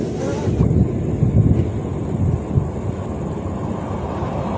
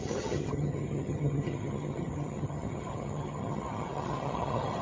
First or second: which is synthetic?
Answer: second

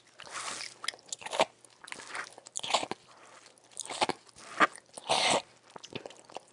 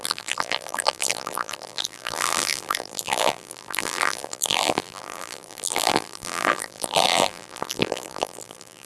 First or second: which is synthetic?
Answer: second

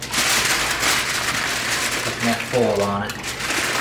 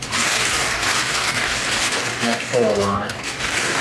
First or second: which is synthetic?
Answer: second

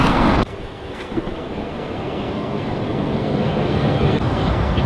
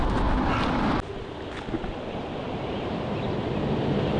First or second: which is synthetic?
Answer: first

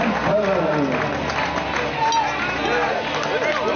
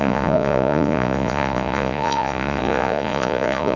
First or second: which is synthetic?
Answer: second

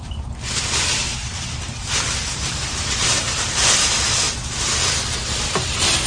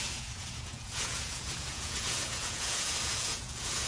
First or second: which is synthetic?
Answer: second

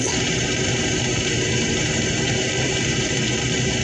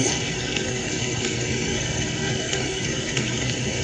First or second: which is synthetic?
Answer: second